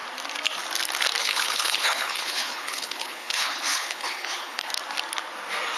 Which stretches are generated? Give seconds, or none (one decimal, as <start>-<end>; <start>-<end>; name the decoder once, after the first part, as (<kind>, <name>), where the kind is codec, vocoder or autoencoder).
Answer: 1.2-4.7 (codec, HILCodec)